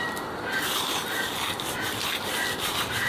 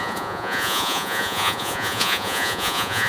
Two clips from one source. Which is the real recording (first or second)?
first